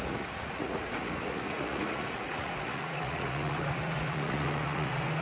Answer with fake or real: fake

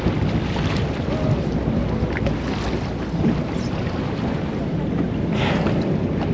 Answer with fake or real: real